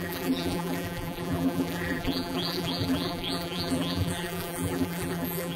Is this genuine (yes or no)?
no